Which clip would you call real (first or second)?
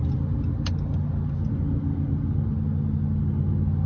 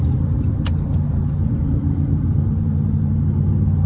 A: first